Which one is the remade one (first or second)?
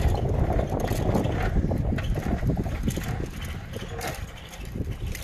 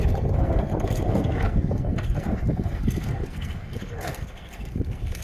second